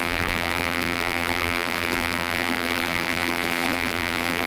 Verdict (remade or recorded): remade